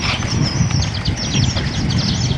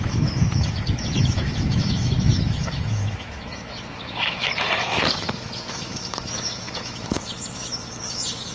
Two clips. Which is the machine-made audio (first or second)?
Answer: second